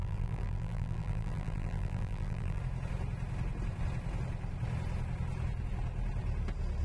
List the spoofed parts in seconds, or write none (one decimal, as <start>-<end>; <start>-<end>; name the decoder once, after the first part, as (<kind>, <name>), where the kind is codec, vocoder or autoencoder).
0.0-2.6 (vocoder, BigVGAN v2)

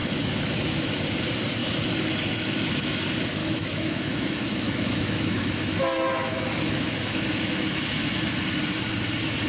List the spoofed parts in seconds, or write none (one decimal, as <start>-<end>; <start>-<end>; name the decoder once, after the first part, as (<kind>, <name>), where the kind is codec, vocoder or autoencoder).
0.0-0.8 (autoencoder, DAC-VAE); 1.6-3.0; 3.4-8.4

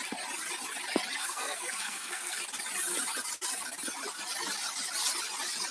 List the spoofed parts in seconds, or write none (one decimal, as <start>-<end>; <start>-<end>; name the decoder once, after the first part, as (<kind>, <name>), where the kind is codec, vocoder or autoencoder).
1.2-2.4 (codec, SNAC)

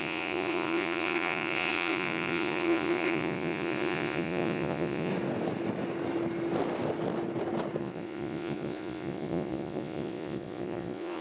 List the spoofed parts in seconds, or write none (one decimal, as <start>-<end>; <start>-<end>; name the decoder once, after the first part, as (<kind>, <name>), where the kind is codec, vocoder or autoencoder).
0.0-5.1 (vocoder, Vocos); 7.8-11.2

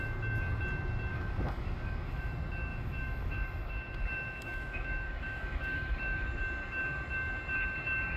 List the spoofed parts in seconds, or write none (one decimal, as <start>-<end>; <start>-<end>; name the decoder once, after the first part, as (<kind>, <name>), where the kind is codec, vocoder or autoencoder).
1.1-2.3 (autoencoder, DAC-VAE); 2.7-6.4

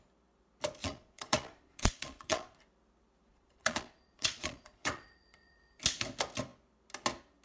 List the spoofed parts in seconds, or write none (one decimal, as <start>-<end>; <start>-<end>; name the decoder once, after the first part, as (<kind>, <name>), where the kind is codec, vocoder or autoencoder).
0.8-2.6 (vocoder, Vocos); 3.3-5.8